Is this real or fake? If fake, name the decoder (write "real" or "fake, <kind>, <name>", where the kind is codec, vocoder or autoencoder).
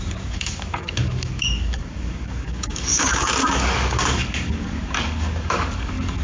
fake, codec, DAC